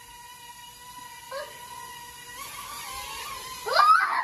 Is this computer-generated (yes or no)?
no